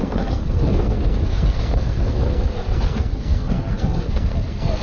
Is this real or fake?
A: fake